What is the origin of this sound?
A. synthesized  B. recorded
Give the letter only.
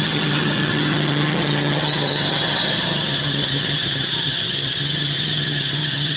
A